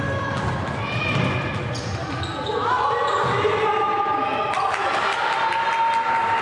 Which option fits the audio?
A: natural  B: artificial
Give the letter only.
A